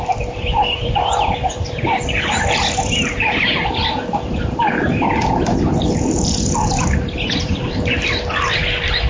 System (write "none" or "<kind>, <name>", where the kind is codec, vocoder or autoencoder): vocoder, BigVGAN v2